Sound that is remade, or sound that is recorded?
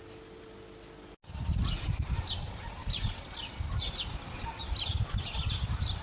recorded